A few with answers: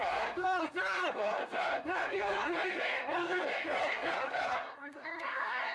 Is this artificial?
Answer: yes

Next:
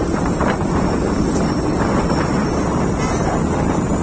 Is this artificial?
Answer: no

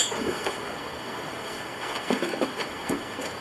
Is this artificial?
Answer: yes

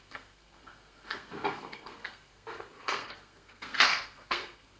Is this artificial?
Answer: yes